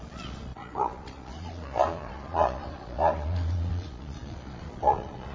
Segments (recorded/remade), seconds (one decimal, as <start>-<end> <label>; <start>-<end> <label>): 0.0-5.3 remade